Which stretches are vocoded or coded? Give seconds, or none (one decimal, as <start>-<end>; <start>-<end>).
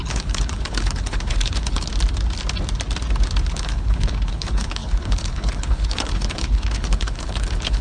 0.0-1.9; 3.5-7.8